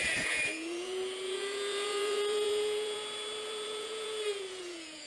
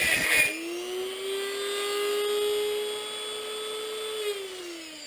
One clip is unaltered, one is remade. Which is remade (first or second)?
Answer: first